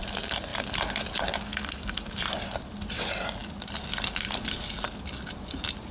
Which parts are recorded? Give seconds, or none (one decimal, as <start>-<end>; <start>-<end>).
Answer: 0.0-5.9